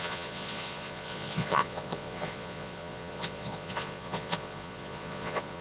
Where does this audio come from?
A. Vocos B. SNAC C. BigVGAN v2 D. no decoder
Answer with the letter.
A